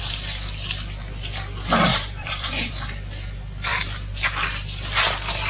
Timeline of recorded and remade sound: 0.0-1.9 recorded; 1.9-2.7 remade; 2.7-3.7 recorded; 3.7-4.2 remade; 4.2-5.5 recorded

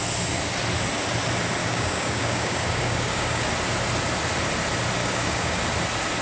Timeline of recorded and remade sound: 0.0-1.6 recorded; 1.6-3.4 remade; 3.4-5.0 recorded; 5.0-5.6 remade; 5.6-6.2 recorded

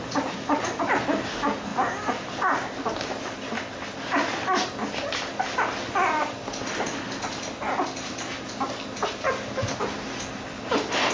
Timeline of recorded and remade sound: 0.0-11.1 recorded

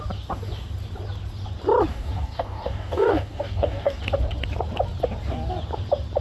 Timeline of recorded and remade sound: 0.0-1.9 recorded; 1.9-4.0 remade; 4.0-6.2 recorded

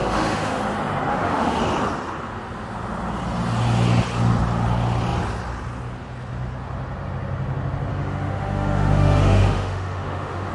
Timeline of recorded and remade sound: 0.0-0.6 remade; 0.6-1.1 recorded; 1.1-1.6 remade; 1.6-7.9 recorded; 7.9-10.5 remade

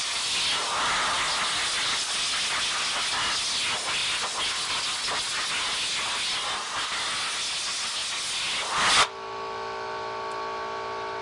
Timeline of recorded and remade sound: 0.0-11.2 recorded